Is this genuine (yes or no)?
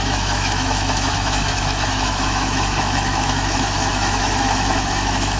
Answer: no